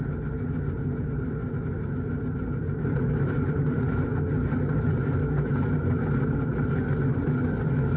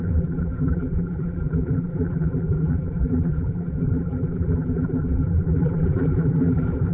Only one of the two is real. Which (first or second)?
first